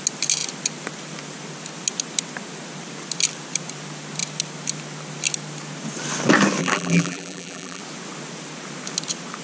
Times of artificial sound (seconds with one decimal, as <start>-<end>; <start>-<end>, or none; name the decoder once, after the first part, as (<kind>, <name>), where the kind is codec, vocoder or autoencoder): 6.6-7.8 (vocoder, BigVGAN v2)